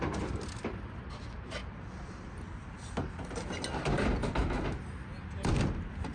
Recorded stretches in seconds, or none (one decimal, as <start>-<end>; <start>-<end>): 0.0-6.1